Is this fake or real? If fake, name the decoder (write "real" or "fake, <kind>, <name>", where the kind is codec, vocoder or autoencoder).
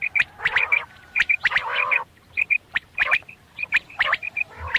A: fake, vocoder, BigVGAN v2